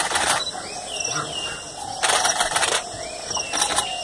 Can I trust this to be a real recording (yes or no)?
yes